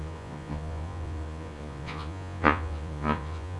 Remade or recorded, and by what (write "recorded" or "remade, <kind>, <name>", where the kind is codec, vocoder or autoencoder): remade, vocoder, Vocos